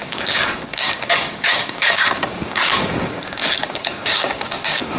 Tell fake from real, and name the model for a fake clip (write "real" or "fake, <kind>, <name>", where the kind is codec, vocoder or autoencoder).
fake, codec, DAC